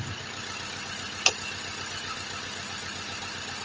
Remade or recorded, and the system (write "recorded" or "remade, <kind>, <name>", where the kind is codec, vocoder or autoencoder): recorded